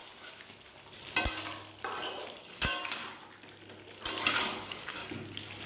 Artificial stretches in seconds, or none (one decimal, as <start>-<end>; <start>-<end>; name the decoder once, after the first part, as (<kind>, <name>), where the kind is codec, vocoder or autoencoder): 2.4-3.0 (codec, DAC); 4.4-5.0